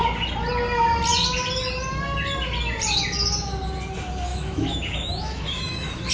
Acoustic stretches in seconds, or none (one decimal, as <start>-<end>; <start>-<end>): 0.0-4.3